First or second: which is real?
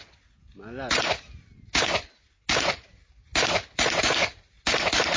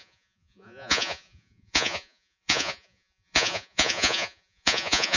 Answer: first